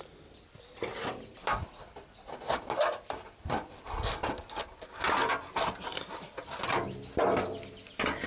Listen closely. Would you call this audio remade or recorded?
recorded